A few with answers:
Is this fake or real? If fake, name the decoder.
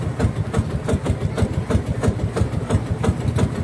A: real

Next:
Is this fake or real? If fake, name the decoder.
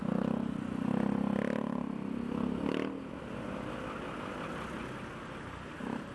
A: real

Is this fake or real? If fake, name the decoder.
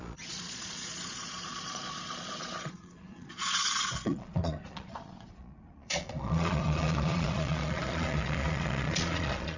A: fake, vocoder, Vocos